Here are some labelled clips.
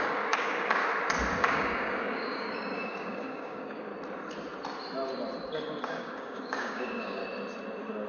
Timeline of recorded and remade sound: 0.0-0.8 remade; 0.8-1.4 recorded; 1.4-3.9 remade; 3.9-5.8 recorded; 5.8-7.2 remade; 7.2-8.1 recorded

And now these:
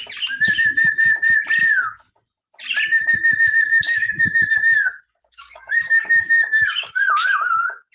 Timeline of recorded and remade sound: 0.0-3.7 recorded; 3.7-4.5 remade; 4.5-5.2 recorded; 5.2-7.0 remade; 7.0-7.9 recorded

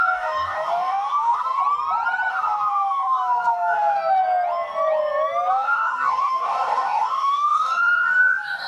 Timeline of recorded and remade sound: 0.0-1.6 remade; 1.6-2.3 recorded; 2.3-4.2 remade; 4.2-5.5 recorded; 5.5-8.7 remade

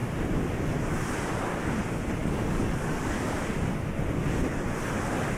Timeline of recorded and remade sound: 0.0-2.2 recorded; 2.2-3.3 remade; 3.3-5.4 recorded

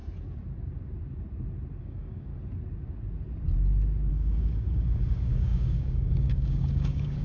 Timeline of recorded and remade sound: 0.0-1.8 recorded; 1.8-2.3 remade; 2.3-4.1 recorded; 4.1-7.2 remade

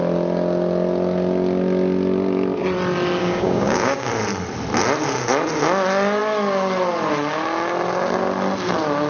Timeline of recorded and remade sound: 0.0-3.2 recorded; 3.2-4.1 remade; 4.1-9.1 recorded

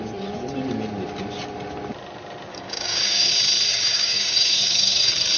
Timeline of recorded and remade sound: 0.0-2.5 recorded; 2.5-3.3 remade; 3.3-3.7 recorded; 3.7-5.0 remade; 5.0-5.4 recorded

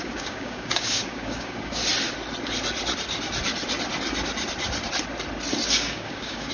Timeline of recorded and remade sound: 0.0-1.8 remade; 1.8-5.7 recorded; 5.7-6.5 remade